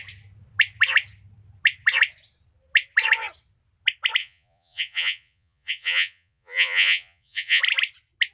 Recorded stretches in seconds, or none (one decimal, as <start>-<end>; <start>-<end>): 0.0-4.2; 7.6-8.3